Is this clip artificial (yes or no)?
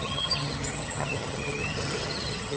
yes